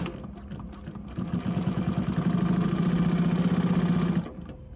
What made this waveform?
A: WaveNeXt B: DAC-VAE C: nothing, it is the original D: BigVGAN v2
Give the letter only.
C